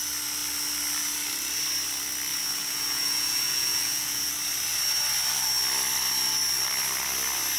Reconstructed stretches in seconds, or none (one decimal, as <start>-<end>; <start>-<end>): 2.3-4.3